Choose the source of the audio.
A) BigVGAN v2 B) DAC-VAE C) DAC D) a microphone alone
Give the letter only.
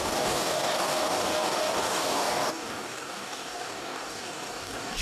C